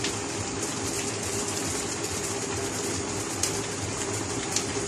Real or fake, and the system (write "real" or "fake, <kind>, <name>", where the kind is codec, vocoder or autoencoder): real